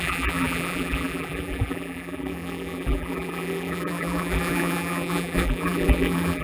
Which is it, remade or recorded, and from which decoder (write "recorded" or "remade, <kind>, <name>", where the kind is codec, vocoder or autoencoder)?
remade, vocoder, BigVGAN v2